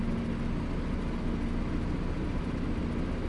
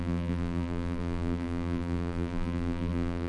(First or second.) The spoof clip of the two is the second